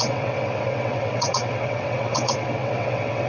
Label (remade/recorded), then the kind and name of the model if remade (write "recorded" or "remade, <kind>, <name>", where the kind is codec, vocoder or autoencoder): remade, vocoder, WaveNeXt